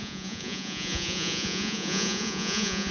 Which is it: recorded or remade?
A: remade